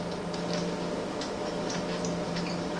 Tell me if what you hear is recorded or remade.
recorded